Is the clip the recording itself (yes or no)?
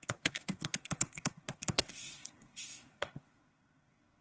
no